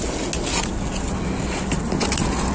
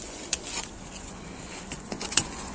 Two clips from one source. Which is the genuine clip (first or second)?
first